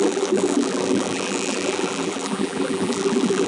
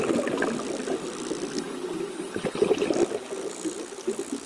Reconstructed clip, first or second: first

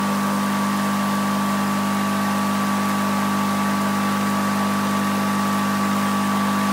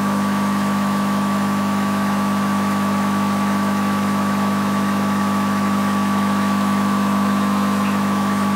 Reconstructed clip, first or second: second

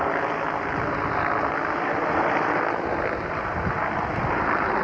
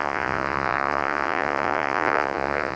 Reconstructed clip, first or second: second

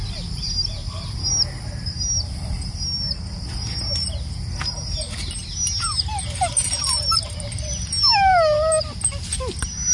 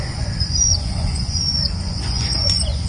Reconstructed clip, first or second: second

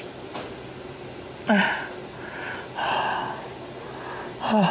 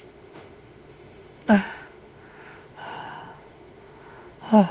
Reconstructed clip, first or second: second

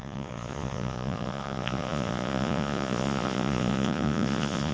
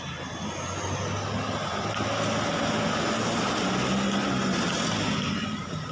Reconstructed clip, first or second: first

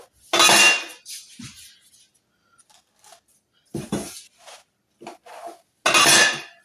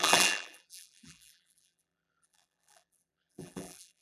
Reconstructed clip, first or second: second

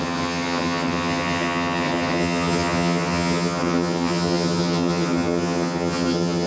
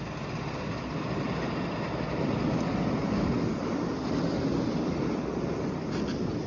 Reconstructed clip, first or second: first